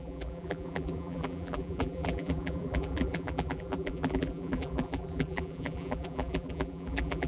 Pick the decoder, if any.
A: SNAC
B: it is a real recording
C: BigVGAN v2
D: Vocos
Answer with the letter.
C